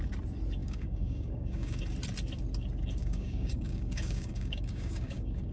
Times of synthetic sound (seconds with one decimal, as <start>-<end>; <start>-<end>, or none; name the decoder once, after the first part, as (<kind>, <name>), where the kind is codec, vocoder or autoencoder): 0.6-1.8 (codec, DAC); 3.0-5.5